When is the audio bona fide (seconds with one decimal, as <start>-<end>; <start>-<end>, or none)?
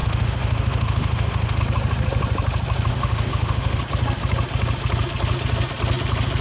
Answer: 1.6-2.9; 3.8-6.4